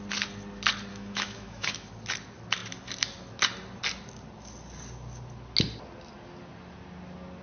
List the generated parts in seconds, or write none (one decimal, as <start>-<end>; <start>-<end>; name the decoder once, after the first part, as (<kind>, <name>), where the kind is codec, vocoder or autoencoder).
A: 0.9-1.9 (autoencoder, DAC-VAE)

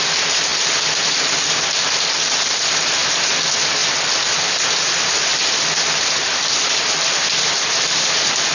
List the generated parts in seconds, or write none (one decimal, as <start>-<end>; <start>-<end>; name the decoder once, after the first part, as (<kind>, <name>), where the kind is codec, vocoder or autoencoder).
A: 0.0-0.5 (vocoder, BigVGAN v2); 3.2-3.8; 6.0-8.5

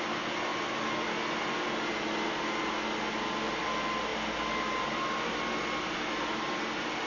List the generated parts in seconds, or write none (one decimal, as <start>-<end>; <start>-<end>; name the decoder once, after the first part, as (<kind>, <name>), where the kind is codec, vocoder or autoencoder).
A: none

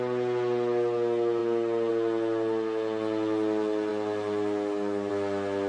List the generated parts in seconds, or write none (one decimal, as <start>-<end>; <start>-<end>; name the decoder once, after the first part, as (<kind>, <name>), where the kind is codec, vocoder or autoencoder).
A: none

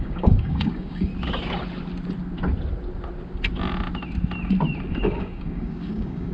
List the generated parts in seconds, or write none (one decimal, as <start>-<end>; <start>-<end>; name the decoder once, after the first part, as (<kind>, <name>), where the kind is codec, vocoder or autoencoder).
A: 0.0-1.1 (codec, DAC); 4.9-6.3

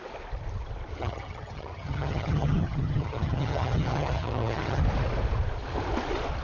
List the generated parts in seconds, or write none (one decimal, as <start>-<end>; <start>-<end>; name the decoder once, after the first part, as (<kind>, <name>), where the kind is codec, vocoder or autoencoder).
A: 1.0-4.8 (vocoder, HiFi-GAN)

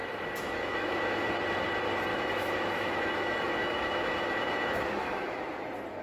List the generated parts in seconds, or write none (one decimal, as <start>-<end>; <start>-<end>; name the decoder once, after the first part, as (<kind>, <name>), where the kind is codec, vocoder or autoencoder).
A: 0.0-1.3 (autoencoder, DAC-VAE); 2.1-5.4

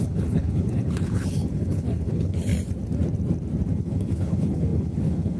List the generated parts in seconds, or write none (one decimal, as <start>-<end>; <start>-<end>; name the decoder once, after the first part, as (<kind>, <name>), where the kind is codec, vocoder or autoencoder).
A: 0.0-2.5 (codec, HILCodec); 3.7-5.4